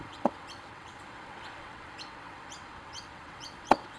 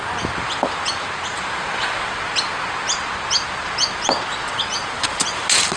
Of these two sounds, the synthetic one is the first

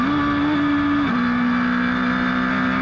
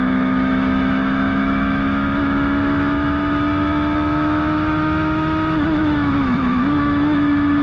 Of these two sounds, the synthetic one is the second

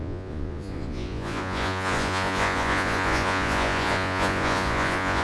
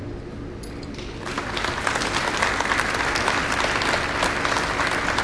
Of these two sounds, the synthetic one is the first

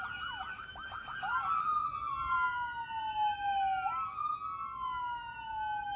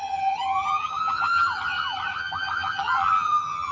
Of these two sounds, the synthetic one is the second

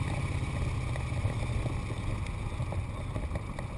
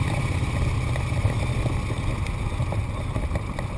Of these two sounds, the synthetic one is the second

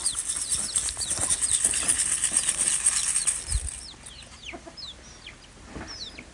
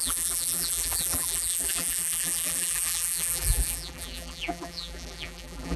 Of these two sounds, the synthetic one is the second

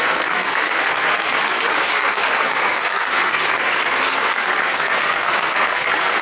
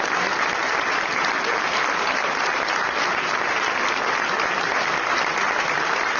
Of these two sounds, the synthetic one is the first